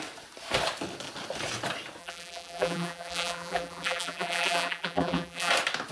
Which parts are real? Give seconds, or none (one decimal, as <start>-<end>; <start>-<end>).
0.0-2.0; 5.5-5.9